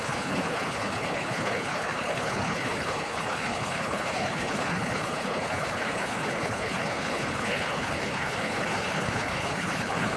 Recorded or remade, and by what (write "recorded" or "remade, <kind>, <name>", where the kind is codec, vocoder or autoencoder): remade, codec, HILCodec